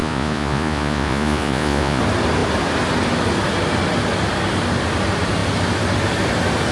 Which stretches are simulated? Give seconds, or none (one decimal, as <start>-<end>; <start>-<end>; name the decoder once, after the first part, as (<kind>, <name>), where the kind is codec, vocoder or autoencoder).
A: 0.0-2.0 (vocoder, Vocos)